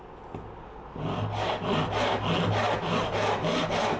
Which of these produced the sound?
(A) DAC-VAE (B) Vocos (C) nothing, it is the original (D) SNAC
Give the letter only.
C